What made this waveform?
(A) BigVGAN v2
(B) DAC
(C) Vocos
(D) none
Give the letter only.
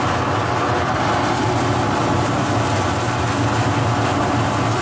D